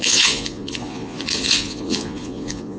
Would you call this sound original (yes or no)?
no